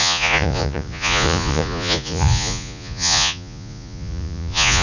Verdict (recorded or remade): remade